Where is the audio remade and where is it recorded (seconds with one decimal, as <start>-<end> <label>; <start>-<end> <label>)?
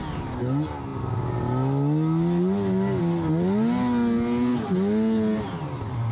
0.0-6.1 recorded